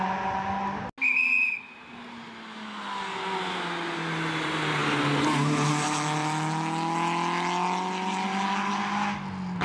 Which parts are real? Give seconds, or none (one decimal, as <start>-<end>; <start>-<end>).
0.0-9.6